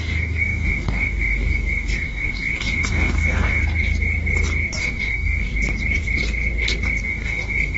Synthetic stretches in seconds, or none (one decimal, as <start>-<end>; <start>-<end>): 0.0-3.6; 4.8-5.5; 7.0-7.8